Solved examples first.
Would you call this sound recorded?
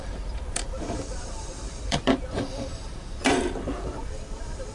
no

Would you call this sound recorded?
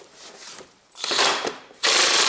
no